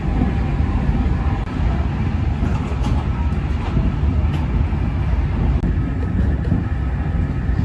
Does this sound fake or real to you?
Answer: real